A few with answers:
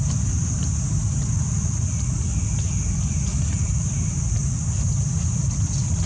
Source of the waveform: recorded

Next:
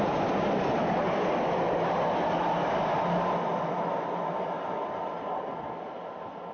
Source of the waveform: recorded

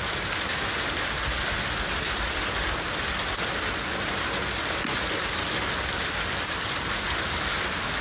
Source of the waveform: recorded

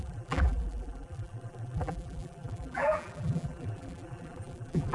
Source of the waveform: remade